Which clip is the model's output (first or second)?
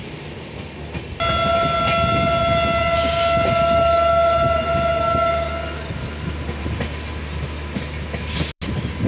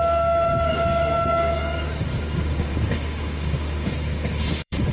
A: second